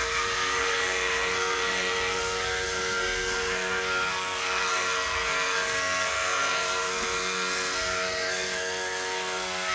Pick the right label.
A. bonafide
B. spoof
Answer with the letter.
B